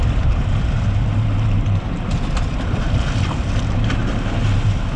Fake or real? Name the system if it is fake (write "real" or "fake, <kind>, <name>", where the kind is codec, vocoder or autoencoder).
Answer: real